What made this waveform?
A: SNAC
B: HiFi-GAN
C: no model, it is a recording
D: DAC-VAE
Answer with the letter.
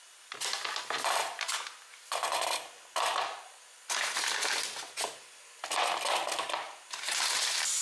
C